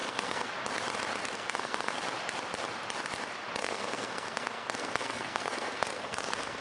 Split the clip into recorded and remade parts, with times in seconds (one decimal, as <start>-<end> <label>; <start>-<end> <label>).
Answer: 0.0-0.5 remade; 0.5-1.2 recorded; 1.2-2.0 remade; 2.0-3.6 recorded; 3.6-6.6 remade